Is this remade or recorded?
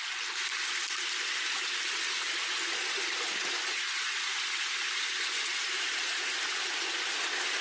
recorded